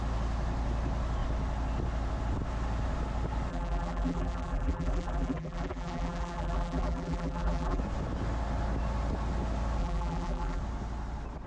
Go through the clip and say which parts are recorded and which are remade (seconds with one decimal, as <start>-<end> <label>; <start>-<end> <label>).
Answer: 0.0-3.5 recorded; 3.5-7.8 remade; 7.8-9.8 recorded; 9.8-10.6 remade; 10.6-11.5 recorded